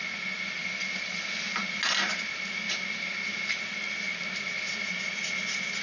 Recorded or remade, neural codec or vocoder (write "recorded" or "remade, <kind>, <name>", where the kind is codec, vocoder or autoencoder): recorded